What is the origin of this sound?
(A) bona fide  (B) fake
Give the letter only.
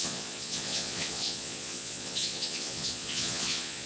B